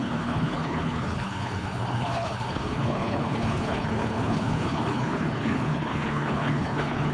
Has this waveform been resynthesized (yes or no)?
yes